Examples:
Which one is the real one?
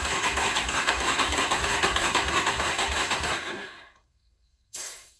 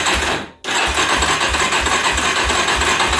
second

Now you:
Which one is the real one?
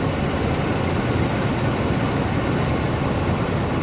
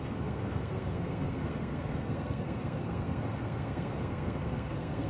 first